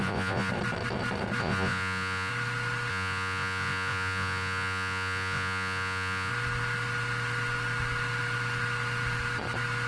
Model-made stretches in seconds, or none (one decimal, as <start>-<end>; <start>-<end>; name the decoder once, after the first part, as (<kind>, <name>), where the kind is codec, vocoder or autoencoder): 0.0-0.5 (vocoder, Vocos); 1.4-2.3; 2.9-6.3